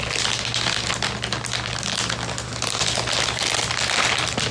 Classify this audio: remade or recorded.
recorded